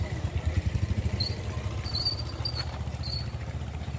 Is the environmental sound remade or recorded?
recorded